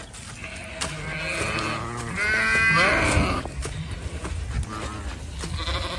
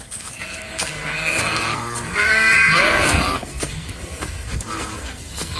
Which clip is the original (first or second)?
first